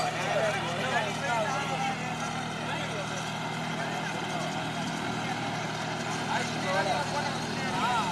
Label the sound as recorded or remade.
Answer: recorded